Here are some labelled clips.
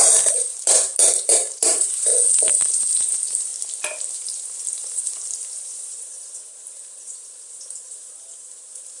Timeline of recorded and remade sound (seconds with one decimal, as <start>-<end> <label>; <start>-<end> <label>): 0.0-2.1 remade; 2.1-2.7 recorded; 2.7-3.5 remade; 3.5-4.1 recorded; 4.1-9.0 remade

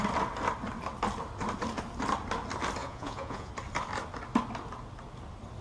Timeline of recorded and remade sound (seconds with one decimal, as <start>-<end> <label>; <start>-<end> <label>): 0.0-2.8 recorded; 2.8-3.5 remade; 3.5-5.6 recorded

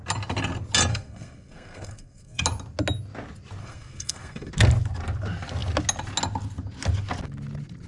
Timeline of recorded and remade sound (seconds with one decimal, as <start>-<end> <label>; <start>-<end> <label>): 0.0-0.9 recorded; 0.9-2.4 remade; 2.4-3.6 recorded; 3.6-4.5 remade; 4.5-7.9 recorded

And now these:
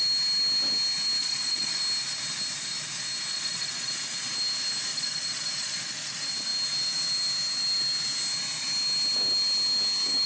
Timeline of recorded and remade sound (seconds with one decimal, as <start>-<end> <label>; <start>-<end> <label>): 0.0-1.2 recorded; 1.2-1.8 remade; 1.8-3.3 recorded; 3.3-3.9 remade; 3.9-4.9 recorded; 4.9-6.1 remade; 6.1-10.3 recorded